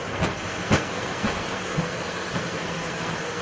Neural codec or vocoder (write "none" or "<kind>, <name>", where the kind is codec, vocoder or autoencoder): codec, SNAC